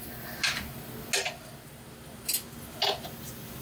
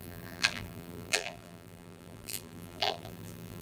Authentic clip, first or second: first